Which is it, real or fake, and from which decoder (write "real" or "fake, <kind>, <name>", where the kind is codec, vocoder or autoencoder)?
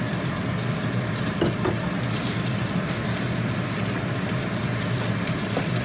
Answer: real